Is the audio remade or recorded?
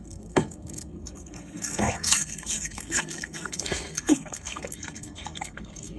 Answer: remade